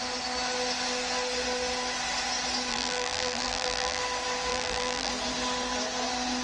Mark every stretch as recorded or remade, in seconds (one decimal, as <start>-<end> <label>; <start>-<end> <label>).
0.0-2.7 recorded; 2.7-4.0 remade; 4.0-4.5 recorded; 4.5-5.1 remade; 5.1-6.4 recorded